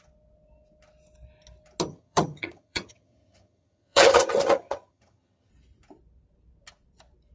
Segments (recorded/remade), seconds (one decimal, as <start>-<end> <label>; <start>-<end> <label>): 0.0-1.9 recorded; 1.9-5.5 remade; 5.5-7.3 recorded